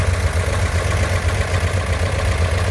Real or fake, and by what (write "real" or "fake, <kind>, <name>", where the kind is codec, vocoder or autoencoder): real